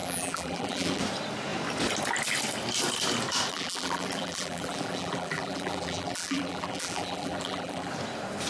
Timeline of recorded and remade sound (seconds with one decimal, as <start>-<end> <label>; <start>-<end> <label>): 0.0-1.0 remade; 1.0-3.5 recorded; 3.5-7.9 remade; 7.9-8.5 recorded